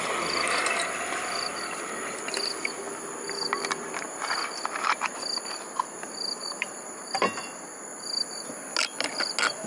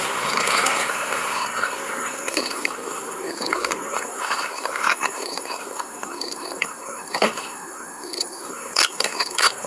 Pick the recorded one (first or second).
first